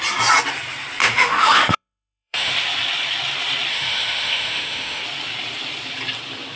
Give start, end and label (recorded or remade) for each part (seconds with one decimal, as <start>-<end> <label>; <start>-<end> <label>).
0.0-1.0 recorded; 1.0-2.5 remade; 2.5-3.7 recorded; 3.7-5.0 remade; 5.0-6.6 recorded